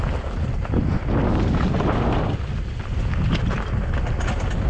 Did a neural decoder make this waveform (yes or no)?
no